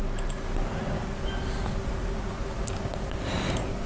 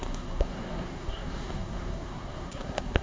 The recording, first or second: first